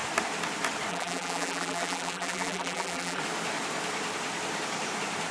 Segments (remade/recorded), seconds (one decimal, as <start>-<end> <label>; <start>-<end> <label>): 0.0-0.9 recorded; 0.9-3.2 remade; 3.2-5.3 recorded